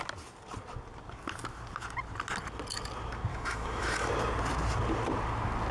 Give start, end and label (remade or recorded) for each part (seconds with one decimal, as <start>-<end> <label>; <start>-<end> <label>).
0.0-3.3 recorded; 3.3-4.1 remade; 4.1-5.7 recorded